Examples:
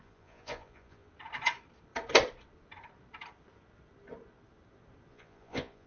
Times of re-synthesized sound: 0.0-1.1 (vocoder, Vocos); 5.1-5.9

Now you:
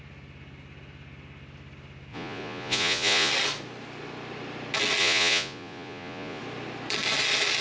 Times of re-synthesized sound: 2.1-3.3 (vocoder, Vocos); 5.0-6.4

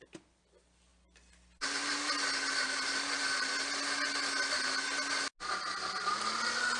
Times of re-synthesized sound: none

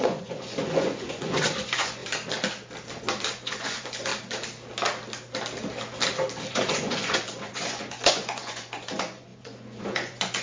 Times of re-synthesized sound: 0.0-2.0 (vocoder, Vocos); 3.3-4.1; 6.5-10.4

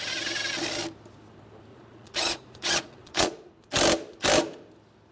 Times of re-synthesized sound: 1.7-3.5 (vocoder, Vocos)